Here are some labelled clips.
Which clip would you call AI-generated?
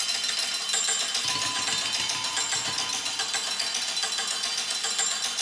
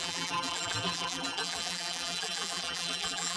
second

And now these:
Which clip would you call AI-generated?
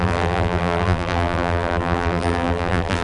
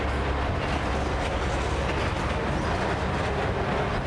first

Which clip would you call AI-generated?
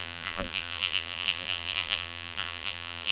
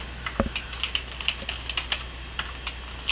first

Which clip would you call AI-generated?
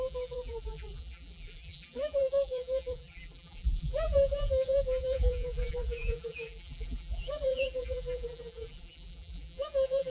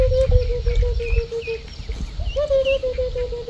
first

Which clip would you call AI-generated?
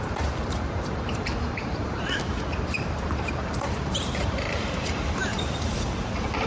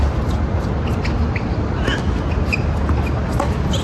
first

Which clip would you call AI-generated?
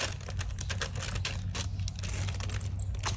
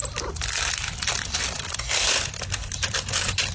second